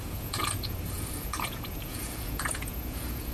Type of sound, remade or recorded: remade